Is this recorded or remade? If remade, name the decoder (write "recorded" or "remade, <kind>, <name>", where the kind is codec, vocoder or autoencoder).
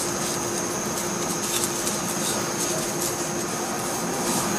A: recorded